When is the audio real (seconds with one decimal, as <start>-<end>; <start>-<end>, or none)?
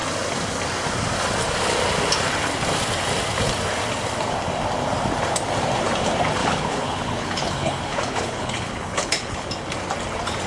0.0-6.4; 9.5-10.5